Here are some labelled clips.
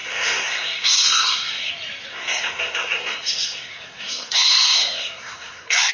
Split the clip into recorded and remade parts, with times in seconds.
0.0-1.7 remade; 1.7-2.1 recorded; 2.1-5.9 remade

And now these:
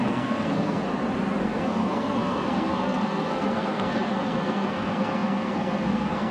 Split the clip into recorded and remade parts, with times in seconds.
0.0-0.8 remade; 0.8-1.4 recorded; 1.4-6.3 remade

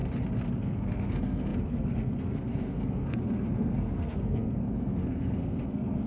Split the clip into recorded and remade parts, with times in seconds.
0.0-0.6 recorded; 0.6-6.1 remade

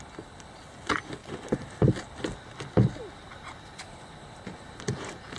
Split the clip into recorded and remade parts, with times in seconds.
0.0-5.4 recorded